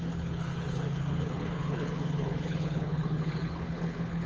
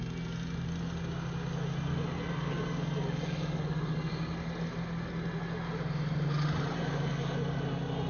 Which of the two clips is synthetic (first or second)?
first